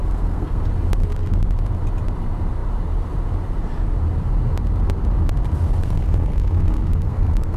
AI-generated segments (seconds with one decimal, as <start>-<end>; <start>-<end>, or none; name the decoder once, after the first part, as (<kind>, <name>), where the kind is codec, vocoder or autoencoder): 0.0-0.6 (codec, SNAC); 5.8-7.6